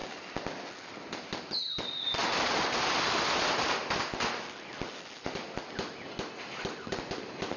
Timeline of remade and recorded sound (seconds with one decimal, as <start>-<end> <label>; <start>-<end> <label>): 0.0-7.6 recorded